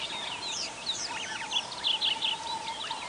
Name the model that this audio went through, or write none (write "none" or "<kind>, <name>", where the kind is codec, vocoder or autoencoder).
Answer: none